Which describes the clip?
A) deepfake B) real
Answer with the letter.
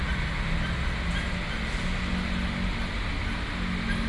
B